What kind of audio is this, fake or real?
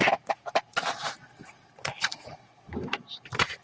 fake